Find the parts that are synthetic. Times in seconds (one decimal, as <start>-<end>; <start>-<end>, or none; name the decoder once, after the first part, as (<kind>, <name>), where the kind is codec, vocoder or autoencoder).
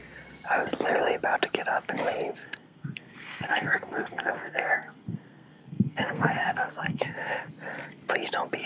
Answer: 2.4-7.5 (codec, SNAC)